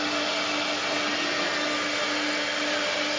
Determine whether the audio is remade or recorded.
recorded